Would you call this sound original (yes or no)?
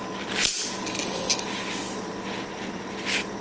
yes